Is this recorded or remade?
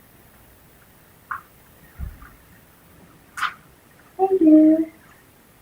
recorded